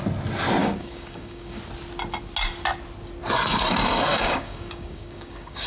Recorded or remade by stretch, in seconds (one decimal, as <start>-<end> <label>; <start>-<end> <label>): 0.0-0.6 recorded; 0.6-1.6 remade; 1.6-4.1 recorded; 4.1-5.7 remade